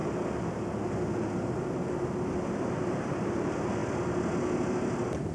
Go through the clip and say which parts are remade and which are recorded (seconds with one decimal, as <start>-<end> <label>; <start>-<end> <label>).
0.0-5.3 recorded